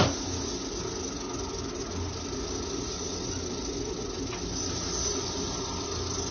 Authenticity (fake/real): real